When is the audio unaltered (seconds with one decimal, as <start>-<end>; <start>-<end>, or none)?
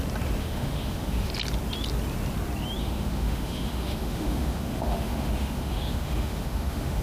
0.0-0.4; 1.3-2.8